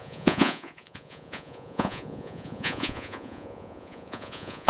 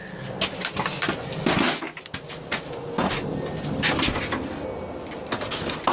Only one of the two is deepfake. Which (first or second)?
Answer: first